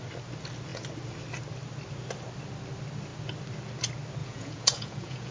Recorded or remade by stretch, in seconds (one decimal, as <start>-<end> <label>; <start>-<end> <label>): 0.0-4.2 recorded; 4.2-5.3 remade